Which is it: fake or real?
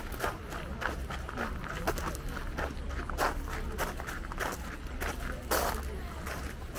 real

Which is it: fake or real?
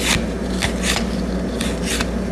real